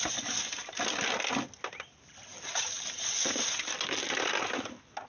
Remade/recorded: recorded